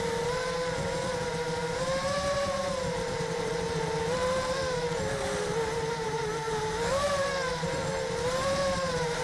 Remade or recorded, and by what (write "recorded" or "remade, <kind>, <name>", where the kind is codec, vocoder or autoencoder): remade, vocoder, BigVGAN v2